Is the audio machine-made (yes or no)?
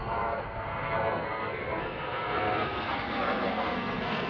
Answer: yes